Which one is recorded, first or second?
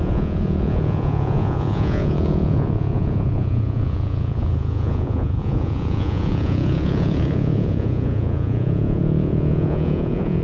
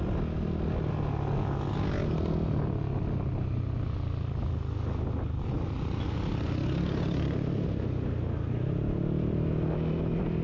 second